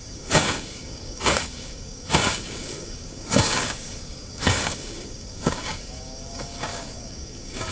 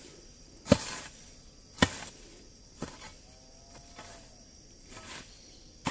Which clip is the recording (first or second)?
second